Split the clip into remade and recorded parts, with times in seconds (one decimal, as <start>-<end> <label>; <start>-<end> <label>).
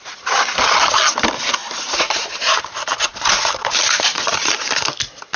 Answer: 0.0-1.6 recorded; 1.6-4.8 remade; 4.8-5.4 recorded